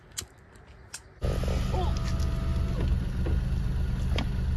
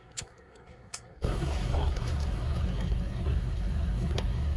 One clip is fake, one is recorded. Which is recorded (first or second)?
first